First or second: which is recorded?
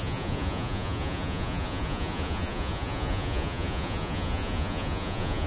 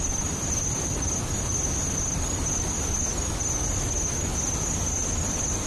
second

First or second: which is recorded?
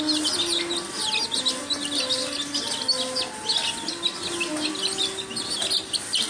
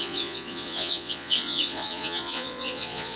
first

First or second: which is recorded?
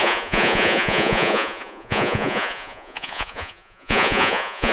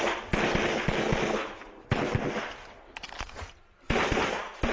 second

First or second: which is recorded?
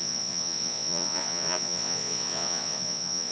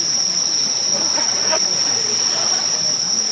second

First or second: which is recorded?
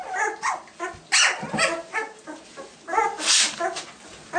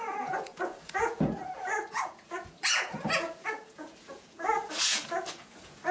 first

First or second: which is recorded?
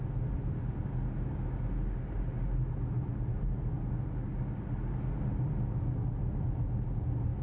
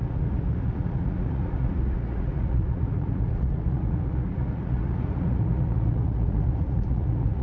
first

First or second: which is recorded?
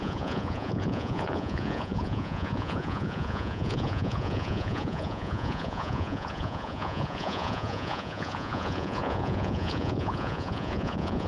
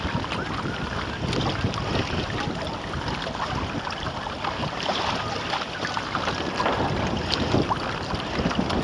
second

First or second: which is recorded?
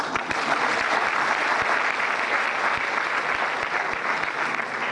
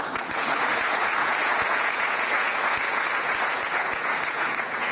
first